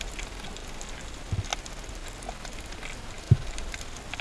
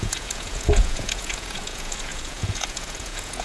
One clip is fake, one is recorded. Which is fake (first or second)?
second